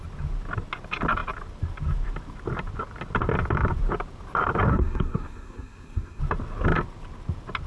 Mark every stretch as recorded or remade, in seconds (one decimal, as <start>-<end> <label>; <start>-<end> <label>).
0.0-4.7 recorded; 4.7-6.2 remade; 6.2-7.7 recorded